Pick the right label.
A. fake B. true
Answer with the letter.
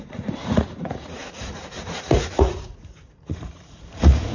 A